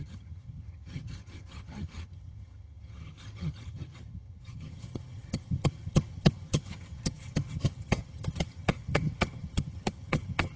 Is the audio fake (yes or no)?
yes